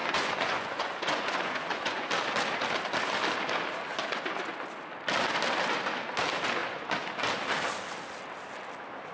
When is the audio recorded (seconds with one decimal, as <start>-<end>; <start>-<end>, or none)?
2.1-9.1